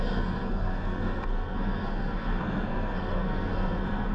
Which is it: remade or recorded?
remade